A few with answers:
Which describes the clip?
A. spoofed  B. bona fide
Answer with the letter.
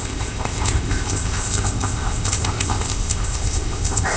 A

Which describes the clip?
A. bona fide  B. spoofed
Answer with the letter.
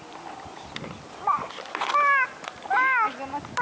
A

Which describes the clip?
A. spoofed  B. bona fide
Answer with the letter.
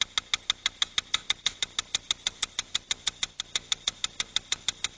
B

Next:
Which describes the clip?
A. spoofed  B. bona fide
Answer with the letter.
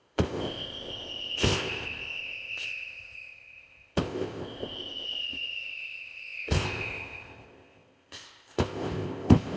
A